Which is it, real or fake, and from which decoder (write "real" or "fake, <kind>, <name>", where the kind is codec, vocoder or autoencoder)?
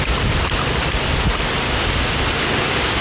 real